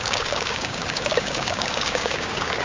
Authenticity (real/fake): fake